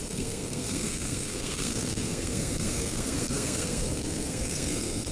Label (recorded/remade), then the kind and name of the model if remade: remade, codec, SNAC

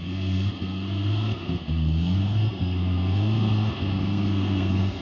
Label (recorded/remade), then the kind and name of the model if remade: remade, codec, SNAC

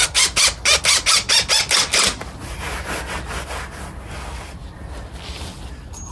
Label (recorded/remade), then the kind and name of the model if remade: recorded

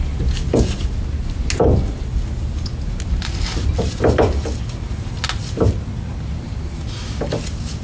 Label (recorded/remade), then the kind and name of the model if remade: recorded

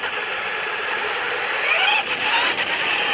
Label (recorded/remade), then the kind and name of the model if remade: recorded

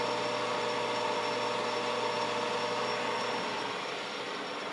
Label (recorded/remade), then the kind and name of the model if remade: recorded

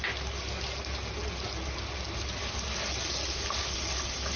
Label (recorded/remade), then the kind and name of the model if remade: recorded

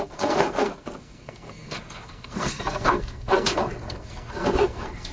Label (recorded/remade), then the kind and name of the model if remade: remade, codec, SNAC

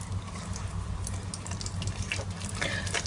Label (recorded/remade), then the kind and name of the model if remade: recorded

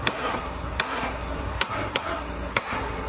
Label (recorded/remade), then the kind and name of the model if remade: remade, codec, SNAC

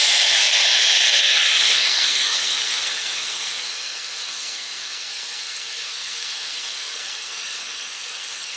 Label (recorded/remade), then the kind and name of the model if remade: remade, codec, SNAC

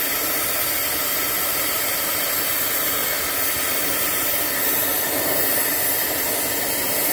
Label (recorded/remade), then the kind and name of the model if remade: recorded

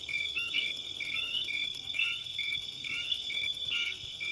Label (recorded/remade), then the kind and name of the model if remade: remade, codec, SNAC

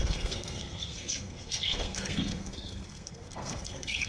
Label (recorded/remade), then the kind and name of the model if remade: remade, codec, SNAC